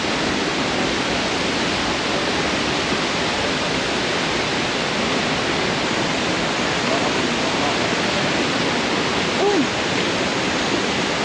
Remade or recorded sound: recorded